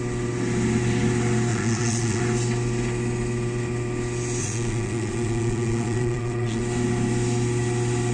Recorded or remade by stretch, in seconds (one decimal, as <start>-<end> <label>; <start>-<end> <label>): 0.0-1.5 recorded; 1.5-2.2 remade; 2.2-4.4 recorded; 4.4-6.6 remade; 6.6-8.1 recorded